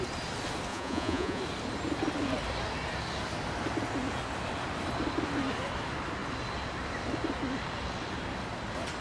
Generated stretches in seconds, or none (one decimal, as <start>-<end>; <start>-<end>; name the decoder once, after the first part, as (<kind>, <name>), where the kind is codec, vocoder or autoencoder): 0.7-1.4 (vocoder, Vocos)

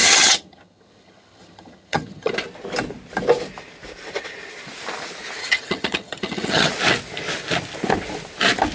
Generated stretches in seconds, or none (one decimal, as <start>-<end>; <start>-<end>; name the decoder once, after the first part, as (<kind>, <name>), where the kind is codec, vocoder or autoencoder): 0.0-2.3 (vocoder, HiFi-GAN); 5.4-6.7

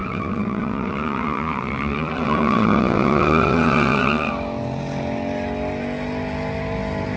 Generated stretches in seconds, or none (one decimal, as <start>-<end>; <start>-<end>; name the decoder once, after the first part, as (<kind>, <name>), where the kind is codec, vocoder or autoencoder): 0.0-4.3 (vocoder, WaveNeXt)

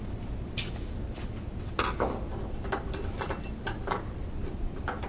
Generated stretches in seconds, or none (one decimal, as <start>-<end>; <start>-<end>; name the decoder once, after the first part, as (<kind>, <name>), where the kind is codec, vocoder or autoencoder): none

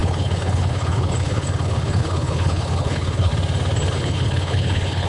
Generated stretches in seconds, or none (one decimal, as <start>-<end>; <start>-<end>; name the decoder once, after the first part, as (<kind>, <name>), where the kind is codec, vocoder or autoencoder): 0.0-3.3 (codec, HILCodec); 3.9-5.1

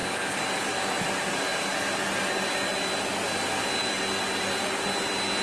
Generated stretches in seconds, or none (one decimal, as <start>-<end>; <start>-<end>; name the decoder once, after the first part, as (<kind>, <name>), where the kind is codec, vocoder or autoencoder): none

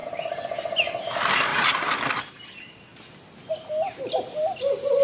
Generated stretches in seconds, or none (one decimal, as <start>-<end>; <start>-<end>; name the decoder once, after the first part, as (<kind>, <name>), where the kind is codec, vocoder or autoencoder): none